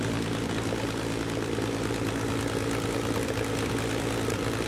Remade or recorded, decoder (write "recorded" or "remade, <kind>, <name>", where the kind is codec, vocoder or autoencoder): recorded